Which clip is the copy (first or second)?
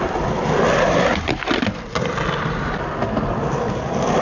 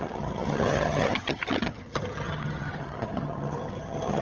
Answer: second